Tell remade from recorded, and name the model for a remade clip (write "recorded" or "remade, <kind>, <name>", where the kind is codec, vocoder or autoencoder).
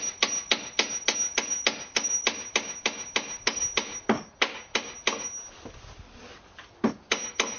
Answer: recorded